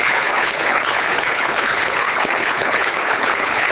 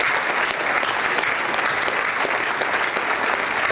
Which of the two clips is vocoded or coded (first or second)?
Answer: first